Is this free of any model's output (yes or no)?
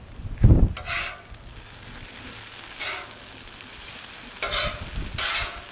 yes